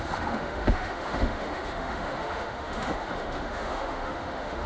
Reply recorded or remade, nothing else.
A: remade